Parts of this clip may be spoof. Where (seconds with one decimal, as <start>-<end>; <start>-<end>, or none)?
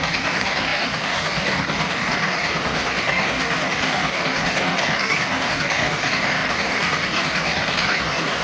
0.0-8.4